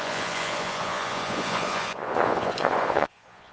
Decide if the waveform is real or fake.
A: fake